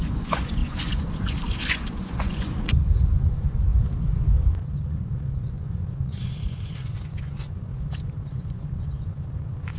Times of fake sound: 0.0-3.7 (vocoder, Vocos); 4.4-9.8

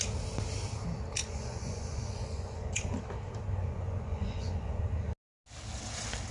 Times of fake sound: 1.2-3.0 (vocoder, Vocos); 3.6-4.8

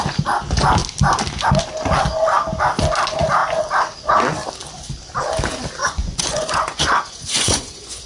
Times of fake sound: 5.8-8.1 (vocoder, Vocos)

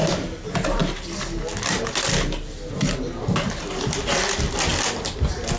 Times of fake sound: none